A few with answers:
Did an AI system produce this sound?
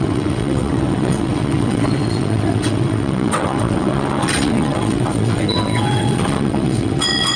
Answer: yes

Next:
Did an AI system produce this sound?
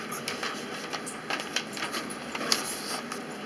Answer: no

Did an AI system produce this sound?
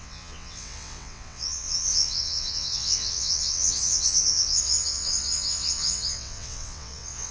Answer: yes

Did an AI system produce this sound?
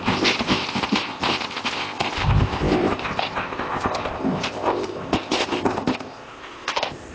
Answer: yes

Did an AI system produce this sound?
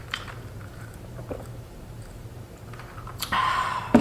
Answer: yes